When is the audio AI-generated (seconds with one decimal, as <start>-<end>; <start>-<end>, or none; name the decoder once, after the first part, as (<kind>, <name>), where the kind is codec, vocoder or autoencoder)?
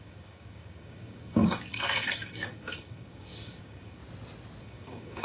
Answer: 0.0-4.0 (codec, DAC); 4.6-5.2